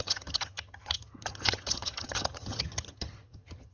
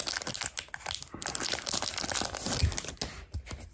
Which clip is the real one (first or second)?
second